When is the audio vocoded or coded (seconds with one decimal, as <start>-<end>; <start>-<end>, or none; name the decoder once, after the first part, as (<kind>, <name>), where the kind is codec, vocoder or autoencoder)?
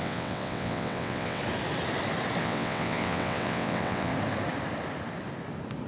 0.0-1.4 (vocoder, WaveNeXt); 2.4-4.1